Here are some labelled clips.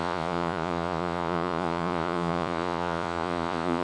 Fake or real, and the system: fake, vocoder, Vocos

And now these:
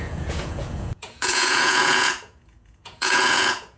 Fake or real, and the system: fake, vocoder, Vocos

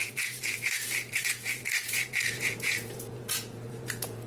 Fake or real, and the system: fake, vocoder, Vocos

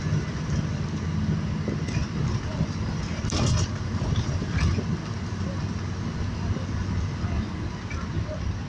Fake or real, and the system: real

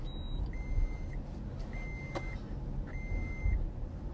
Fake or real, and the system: real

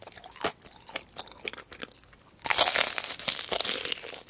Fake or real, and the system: real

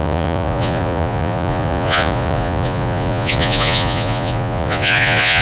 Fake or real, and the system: fake, vocoder, Vocos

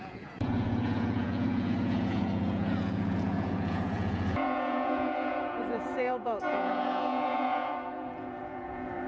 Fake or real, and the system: fake, vocoder, Vocos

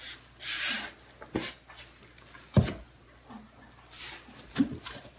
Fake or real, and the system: real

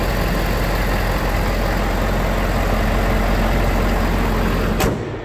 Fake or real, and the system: real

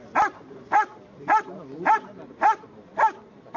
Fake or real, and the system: real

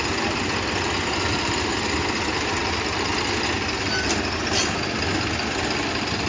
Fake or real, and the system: real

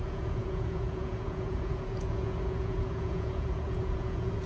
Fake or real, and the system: fake, vocoder, Vocos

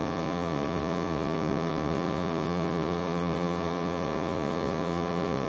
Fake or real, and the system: fake, vocoder, Vocos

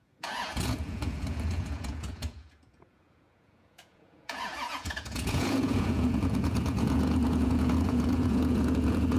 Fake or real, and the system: fake, vocoder, Vocos